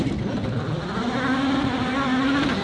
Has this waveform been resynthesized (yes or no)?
no